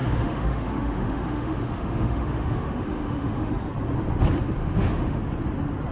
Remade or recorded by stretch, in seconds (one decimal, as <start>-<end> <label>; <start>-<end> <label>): 0.0-3.5 remade; 3.5-4.6 recorded; 4.6-5.2 remade; 5.2-5.9 recorded